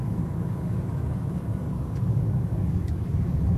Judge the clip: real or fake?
fake